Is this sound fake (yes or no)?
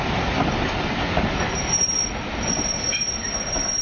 no